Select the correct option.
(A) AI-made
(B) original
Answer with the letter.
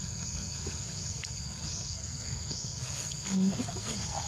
A